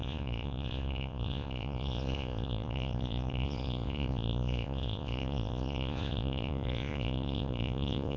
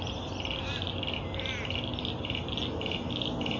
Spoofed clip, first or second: first